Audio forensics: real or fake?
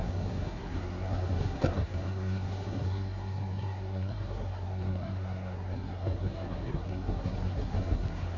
fake